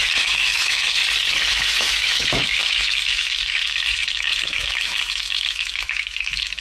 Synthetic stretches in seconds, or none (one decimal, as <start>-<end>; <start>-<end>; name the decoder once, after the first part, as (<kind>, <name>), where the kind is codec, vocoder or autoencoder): 0.0-1.0 (autoencoder, DAC-VAE); 1.5-6.6